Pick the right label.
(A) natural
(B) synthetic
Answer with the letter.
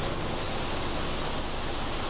A